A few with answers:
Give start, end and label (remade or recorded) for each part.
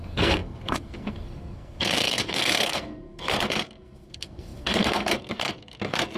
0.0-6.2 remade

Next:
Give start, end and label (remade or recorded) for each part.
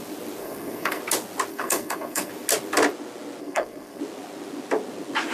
0.0-0.4 recorded; 0.4-1.0 remade; 1.0-1.5 recorded; 1.5-2.3 remade; 2.3-3.4 recorded; 3.4-4.0 remade; 4.0-5.3 recorded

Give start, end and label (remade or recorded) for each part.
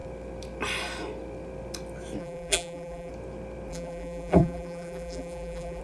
0.0-2.2 recorded; 2.2-3.1 remade; 3.1-3.7 recorded; 3.7-5.8 remade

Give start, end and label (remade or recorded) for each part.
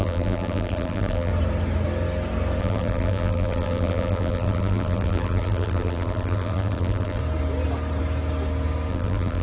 0.0-1.3 remade; 1.3-2.6 recorded; 2.6-7.2 remade; 7.2-8.9 recorded; 8.9-9.4 remade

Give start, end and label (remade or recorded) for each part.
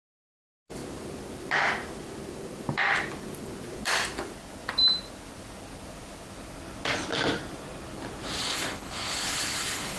0.0-8.4 recorded; 8.4-10.0 remade